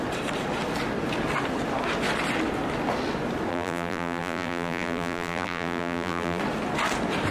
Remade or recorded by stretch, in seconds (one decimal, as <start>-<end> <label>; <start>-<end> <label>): 0.0-3.5 recorded; 3.5-6.4 remade; 6.4-7.3 recorded